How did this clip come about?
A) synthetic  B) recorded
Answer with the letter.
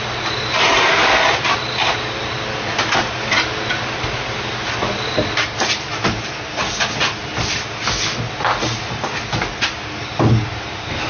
B